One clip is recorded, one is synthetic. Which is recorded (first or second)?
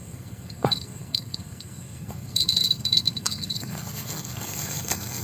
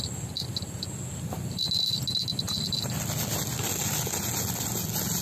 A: second